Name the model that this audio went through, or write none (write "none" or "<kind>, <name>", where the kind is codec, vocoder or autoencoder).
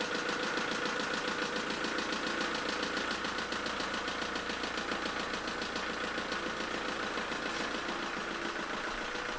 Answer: none